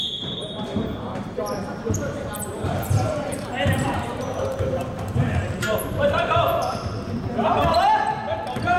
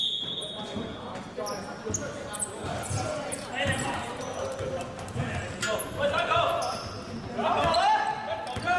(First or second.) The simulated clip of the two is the first